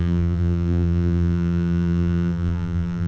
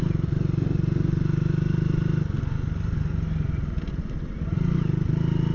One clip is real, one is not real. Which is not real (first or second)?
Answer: first